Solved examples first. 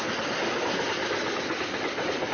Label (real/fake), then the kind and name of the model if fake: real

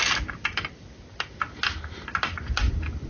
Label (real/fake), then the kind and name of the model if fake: real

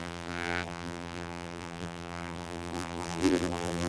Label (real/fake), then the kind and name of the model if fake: fake, vocoder, BigVGAN v2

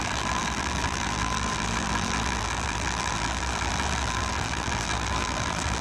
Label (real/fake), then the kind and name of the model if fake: fake, vocoder, BigVGAN v2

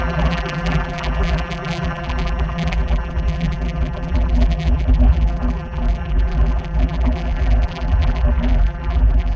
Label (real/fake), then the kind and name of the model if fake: fake, vocoder, BigVGAN v2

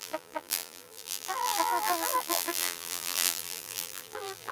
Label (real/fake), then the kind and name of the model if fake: fake, vocoder, BigVGAN v2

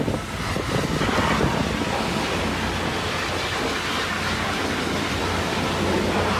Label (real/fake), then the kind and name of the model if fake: real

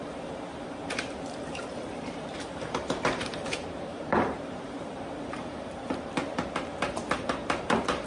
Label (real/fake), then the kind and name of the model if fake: fake, vocoder, BigVGAN v2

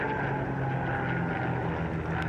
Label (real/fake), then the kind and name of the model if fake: real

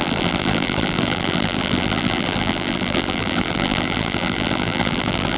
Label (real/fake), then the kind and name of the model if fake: fake, vocoder, BigVGAN v2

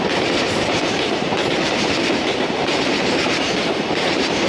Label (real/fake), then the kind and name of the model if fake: fake, vocoder, BigVGAN v2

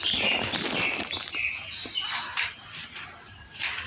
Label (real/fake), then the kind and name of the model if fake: real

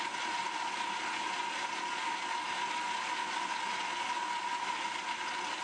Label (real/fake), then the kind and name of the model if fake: fake, vocoder, BigVGAN v2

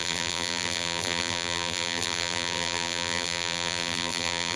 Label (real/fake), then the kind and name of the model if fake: fake, vocoder, BigVGAN v2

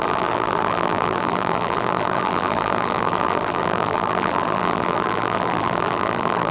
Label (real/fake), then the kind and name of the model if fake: fake, vocoder, BigVGAN v2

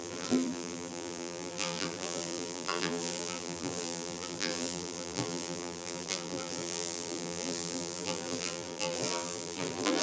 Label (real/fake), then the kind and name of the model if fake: fake, vocoder, BigVGAN v2